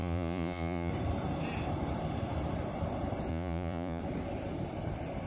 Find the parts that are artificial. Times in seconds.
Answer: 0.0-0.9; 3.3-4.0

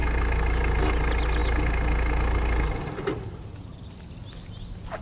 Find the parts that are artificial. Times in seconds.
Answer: none

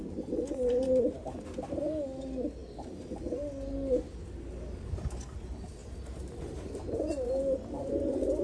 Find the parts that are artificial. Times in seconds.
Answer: 5.8-7.3

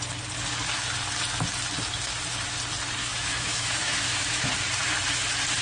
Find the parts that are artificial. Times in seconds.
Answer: 3.0-4.5